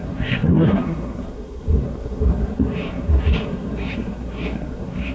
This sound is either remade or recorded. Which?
remade